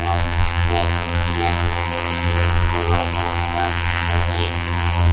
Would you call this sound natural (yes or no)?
no